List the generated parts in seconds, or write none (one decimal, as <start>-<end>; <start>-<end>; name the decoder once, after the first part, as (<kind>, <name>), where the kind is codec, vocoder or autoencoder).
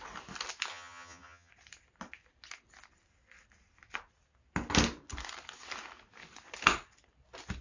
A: 0.7-1.5 (vocoder, HiFi-GAN)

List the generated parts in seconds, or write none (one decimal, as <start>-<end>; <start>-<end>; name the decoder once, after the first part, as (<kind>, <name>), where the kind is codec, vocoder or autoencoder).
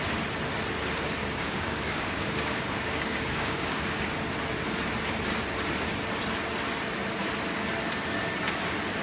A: 1.2-4.2 (codec, DAC)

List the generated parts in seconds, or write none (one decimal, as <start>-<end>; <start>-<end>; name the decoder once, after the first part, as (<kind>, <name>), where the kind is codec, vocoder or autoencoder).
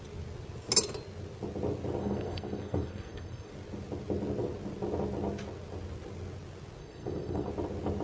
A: 2.0-3.5 (codec, SNAC); 6.8-7.5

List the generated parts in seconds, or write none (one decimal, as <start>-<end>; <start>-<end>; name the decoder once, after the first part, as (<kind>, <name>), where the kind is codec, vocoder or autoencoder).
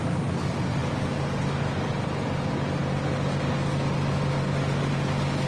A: none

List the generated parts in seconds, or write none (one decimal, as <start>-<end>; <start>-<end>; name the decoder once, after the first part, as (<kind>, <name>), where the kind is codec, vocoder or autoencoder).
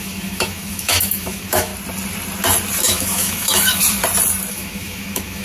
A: 0.0-1.7 (autoencoder, DAC-VAE); 2.8-3.8; 4.5-5.4